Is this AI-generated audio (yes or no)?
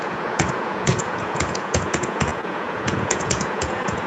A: yes